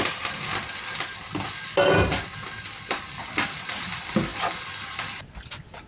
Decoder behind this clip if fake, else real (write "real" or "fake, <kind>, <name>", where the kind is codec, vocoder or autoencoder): real